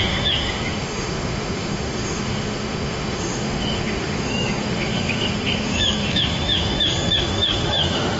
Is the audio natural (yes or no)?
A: no